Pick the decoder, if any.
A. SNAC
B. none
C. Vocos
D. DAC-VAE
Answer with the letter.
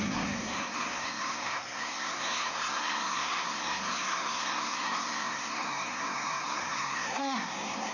A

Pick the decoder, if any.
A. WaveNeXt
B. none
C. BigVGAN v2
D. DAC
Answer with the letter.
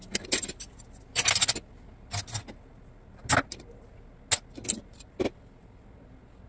B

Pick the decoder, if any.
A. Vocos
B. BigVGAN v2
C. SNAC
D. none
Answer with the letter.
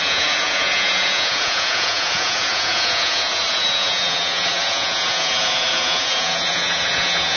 A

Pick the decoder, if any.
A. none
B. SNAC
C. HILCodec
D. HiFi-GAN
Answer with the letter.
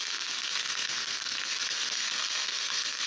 B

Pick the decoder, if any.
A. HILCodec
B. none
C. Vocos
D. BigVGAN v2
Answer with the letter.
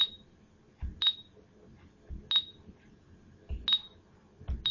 B